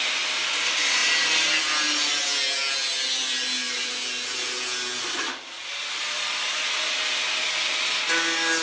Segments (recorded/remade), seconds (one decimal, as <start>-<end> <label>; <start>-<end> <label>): 0.0-8.6 recorded